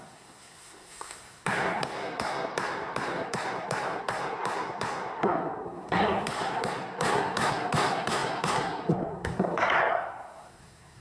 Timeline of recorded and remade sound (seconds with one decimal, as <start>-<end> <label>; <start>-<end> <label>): 0.0-11.0 remade